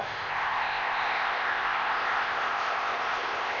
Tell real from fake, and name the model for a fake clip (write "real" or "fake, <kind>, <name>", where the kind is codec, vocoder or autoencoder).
fake, codec, ZipCodec